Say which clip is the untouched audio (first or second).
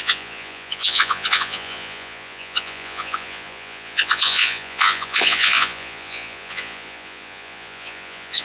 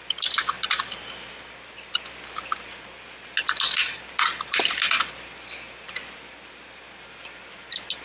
second